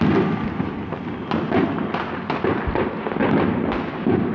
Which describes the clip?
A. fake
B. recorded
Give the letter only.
B